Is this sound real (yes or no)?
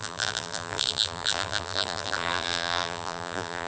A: no